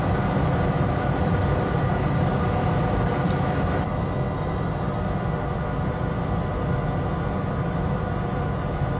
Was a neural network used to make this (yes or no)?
no